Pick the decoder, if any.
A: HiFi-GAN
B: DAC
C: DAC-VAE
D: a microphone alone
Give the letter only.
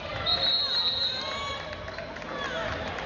D